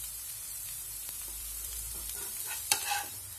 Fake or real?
fake